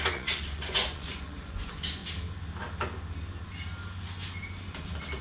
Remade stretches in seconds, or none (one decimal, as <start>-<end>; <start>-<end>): 0.0-2.0